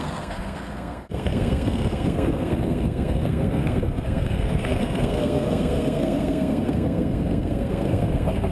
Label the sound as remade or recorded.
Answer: remade